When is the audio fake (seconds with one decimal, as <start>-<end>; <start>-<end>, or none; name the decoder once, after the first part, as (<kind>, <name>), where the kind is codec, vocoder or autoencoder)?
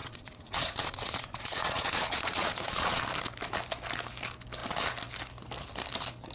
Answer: 0.0-3.0 (vocoder, Vocos)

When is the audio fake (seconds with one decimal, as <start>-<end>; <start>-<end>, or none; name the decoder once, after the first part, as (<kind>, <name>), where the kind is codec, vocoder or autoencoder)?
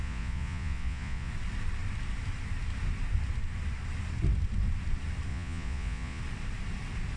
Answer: 0.0-1.3 (vocoder, Vocos); 5.3-6.2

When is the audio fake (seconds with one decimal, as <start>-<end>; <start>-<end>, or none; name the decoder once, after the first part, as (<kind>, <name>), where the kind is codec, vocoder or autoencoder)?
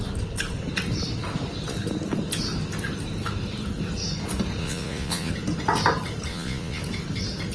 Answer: 4.6-5.3 (vocoder, Vocos); 6.3-6.8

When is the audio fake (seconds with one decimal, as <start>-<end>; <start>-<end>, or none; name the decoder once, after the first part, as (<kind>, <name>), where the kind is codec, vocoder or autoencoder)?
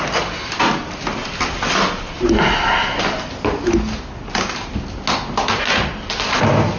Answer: none